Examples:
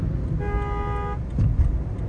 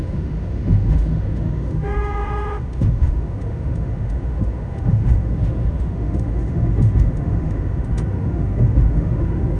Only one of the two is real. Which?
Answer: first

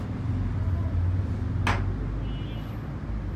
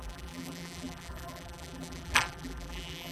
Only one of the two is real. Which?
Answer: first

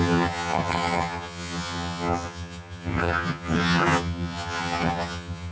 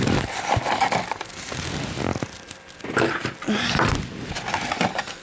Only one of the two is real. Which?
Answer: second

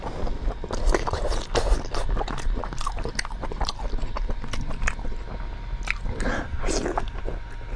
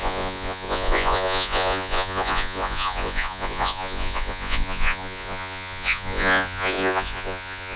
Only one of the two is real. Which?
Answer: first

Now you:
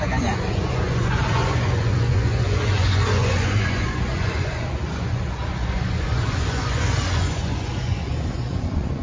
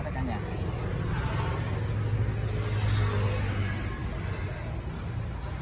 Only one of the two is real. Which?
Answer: second